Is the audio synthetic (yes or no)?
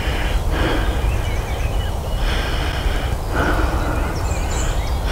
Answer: no